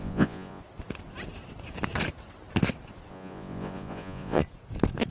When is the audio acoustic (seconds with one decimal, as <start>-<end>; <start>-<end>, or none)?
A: 0.6-3.1; 4.4-5.1